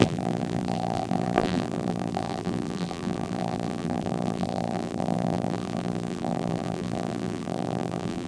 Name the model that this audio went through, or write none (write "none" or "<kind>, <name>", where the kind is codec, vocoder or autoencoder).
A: vocoder, BigVGAN v2